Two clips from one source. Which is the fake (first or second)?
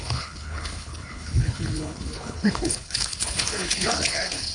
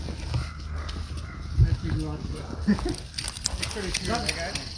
first